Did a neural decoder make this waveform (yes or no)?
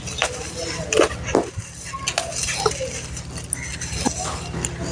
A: no